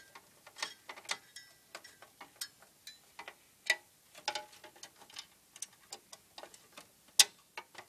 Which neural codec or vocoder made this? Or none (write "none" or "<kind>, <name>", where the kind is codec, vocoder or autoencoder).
none